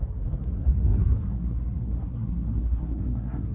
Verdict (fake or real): fake